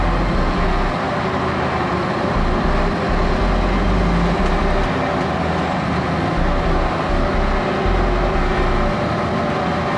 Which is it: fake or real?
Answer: real